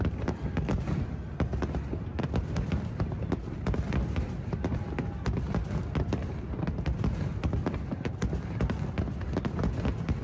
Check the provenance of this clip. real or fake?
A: real